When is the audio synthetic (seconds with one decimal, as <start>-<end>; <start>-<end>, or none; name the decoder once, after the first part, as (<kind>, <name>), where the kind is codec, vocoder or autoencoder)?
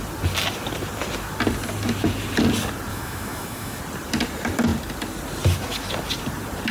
2.9-3.8 (autoencoder, DAC-VAE)